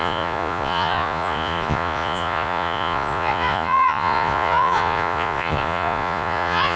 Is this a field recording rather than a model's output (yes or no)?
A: no